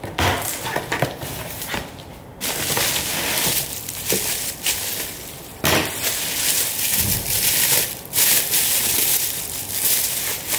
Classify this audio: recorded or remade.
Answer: remade